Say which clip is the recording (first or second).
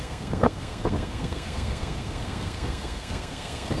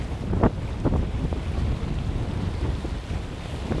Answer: second